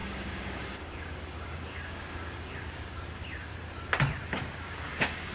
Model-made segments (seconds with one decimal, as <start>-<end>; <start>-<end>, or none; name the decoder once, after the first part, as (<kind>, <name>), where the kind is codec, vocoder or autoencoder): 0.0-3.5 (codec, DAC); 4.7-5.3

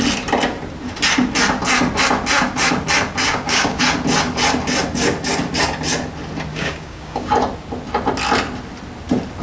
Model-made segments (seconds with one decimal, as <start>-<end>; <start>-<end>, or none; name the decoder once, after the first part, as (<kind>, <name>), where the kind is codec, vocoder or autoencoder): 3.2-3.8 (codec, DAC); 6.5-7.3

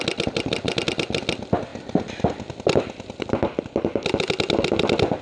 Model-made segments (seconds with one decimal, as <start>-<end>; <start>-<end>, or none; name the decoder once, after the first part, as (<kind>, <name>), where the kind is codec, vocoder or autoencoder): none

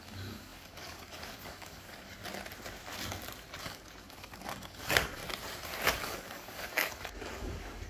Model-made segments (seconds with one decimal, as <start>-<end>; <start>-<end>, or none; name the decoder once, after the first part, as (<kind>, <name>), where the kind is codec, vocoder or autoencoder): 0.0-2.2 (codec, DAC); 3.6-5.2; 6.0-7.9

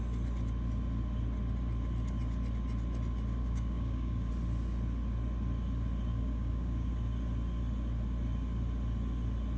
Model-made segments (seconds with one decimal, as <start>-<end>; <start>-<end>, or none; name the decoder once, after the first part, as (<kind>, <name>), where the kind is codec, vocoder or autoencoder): 3.4-4.3 (codec, DAC); 6.1-6.9

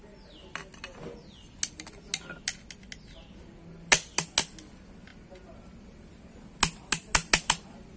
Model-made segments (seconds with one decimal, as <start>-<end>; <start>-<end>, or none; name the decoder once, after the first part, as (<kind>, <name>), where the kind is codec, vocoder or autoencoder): none